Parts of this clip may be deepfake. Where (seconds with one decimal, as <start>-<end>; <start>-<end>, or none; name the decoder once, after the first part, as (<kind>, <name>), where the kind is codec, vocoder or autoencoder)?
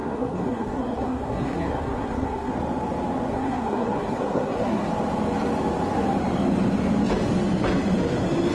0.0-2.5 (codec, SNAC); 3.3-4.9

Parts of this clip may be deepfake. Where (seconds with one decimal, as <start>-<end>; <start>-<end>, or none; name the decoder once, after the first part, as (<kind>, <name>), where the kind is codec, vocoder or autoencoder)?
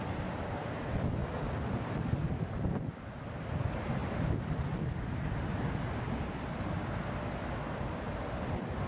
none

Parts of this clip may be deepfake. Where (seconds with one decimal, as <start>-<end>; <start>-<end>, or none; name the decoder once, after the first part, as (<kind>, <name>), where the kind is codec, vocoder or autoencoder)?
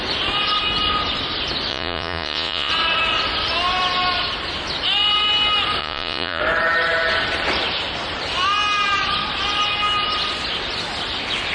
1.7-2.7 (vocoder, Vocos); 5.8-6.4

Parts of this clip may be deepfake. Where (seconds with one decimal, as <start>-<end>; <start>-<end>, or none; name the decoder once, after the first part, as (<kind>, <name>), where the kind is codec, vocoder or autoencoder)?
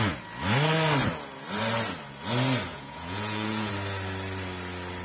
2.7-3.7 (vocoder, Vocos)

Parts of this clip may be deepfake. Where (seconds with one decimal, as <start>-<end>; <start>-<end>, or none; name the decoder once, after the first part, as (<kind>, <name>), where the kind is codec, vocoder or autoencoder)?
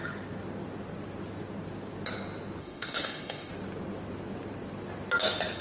2.6-3.5 (autoencoder, DAC-VAE)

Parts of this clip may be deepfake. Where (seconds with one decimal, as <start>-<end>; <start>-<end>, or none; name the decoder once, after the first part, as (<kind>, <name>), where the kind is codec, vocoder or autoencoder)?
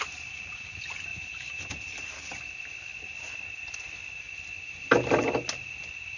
none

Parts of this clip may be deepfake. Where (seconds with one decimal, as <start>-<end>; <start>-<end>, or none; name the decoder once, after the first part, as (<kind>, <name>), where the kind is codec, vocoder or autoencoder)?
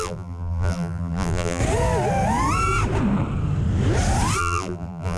0.0-1.6 (vocoder, BigVGAN v2); 4.4-5.2